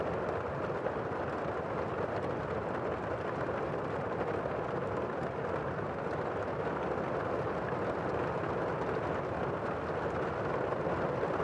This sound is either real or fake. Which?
real